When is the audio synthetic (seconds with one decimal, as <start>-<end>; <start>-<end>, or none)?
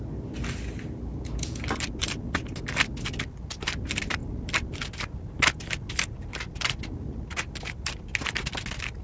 1.1-1.6